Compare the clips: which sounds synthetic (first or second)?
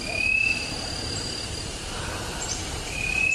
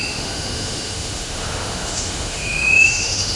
second